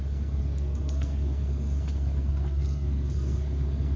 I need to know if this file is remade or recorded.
remade